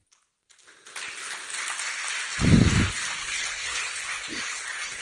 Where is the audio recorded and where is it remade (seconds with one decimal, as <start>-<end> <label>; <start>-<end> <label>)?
0.0-3.2 recorded; 3.2-5.0 remade